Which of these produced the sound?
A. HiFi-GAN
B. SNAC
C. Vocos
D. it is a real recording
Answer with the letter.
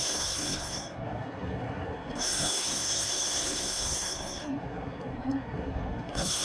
B